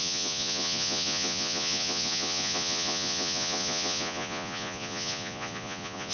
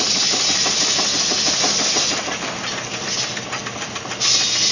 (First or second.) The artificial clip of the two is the first